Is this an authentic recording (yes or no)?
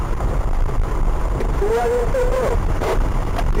no